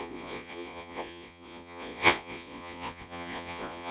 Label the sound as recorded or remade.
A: remade